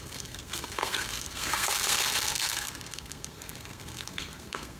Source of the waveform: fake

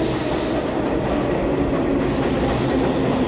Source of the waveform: real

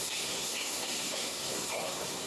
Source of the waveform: fake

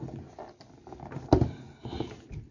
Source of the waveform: real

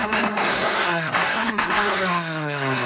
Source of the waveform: fake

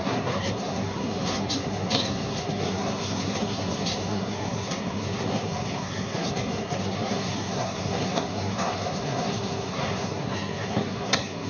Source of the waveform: fake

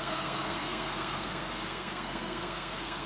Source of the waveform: fake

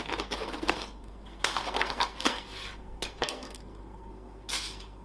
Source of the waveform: fake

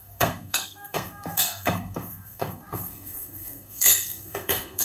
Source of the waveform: fake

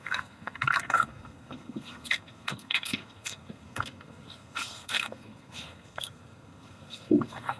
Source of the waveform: fake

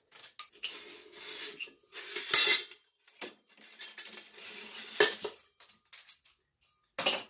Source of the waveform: real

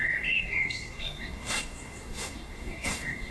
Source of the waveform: fake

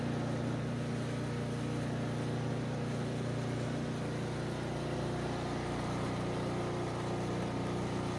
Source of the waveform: real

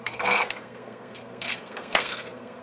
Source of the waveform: fake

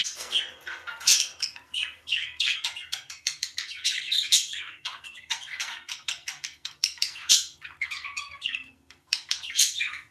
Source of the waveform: fake